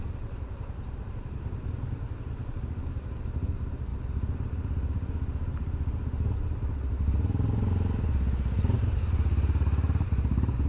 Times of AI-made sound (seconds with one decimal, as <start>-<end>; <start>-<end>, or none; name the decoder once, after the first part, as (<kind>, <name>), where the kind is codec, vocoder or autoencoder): none